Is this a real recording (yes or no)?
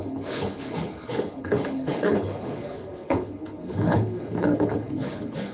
no